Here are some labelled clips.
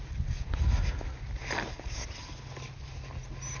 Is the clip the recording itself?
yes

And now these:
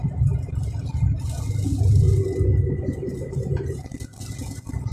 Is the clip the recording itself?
yes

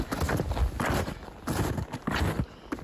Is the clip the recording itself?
yes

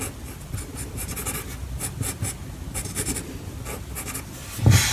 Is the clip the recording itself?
yes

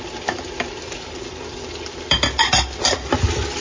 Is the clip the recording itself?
yes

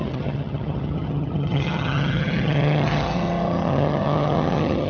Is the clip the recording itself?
no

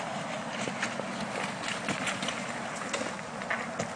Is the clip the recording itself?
yes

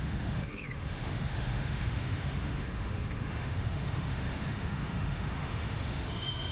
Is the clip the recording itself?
no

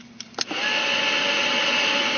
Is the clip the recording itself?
yes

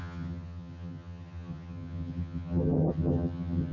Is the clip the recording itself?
no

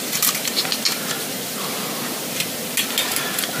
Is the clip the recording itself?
yes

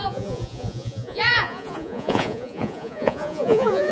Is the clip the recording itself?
no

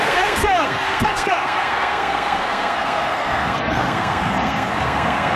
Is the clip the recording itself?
no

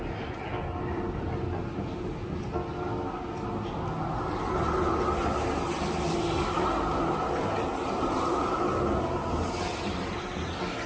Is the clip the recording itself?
yes